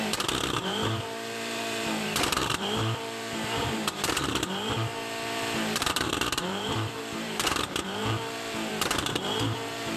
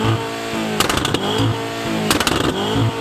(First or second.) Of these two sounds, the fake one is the first